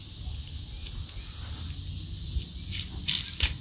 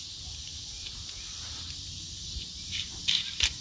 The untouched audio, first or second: first